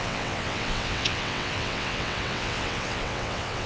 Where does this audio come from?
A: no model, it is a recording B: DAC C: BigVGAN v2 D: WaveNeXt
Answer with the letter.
D